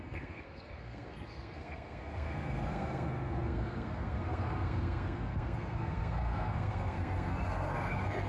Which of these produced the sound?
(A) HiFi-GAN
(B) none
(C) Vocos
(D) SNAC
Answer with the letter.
D